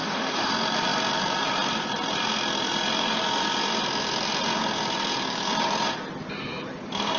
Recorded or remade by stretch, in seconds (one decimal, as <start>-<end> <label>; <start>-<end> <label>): 0.0-0.5 remade; 0.5-7.2 recorded